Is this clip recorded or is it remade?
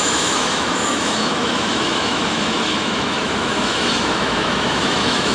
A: remade